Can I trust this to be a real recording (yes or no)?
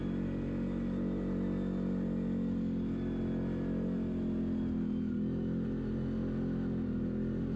yes